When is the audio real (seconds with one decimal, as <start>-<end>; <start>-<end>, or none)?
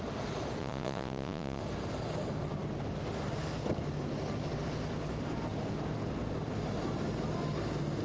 0.0-0.6; 1.6-8.0